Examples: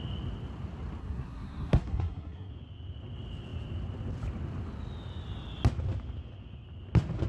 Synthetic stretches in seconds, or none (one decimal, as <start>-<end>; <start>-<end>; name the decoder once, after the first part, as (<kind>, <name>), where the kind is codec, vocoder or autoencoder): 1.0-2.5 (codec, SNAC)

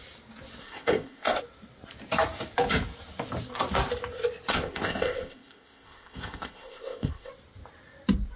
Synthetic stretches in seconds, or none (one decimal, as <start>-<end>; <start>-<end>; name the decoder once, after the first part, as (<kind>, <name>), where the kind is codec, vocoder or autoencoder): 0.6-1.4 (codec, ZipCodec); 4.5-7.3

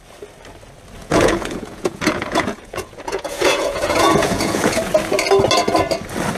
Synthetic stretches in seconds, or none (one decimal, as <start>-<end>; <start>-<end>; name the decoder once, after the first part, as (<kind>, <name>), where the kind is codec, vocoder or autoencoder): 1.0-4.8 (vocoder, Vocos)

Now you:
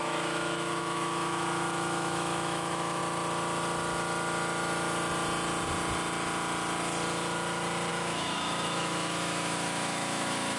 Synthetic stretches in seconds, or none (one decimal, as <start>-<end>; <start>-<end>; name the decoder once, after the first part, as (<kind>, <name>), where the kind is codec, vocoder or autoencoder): 0.0-3.0 (autoencoder, DAC-VAE); 7.9-10.6